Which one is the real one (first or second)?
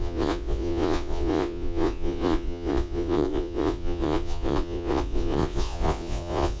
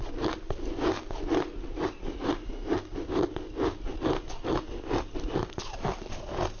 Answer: second